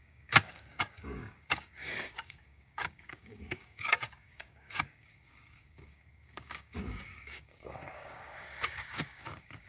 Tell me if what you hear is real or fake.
fake